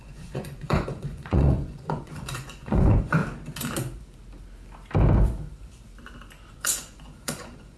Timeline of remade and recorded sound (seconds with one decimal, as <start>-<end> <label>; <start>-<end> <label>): 0.0-3.2 remade; 3.2-6.5 recorded; 6.5-7.8 remade